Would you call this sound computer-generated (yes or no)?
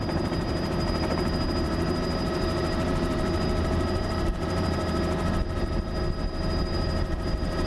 yes